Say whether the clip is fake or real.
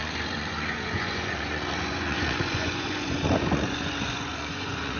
fake